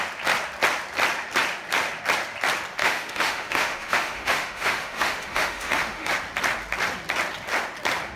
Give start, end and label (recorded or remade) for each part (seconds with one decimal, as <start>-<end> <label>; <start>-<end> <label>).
0.0-2.8 recorded; 2.8-6.1 remade; 6.1-8.2 recorded

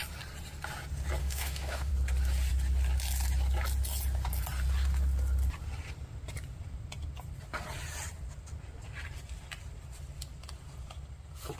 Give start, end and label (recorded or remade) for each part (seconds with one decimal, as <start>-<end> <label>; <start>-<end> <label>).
0.0-1.2 recorded; 1.2-1.9 remade; 1.9-11.6 recorded